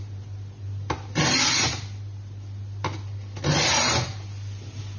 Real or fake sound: real